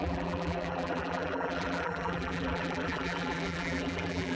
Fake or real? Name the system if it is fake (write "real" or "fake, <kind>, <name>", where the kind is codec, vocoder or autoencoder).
fake, vocoder, BigVGAN v2